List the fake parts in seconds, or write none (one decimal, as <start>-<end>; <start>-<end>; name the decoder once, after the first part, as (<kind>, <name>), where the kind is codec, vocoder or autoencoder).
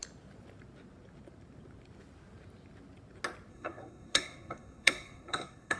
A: 3.5-5.8 (codec, SNAC)